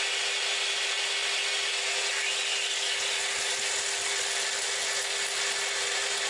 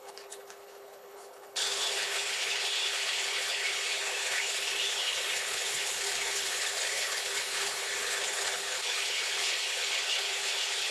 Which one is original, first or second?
first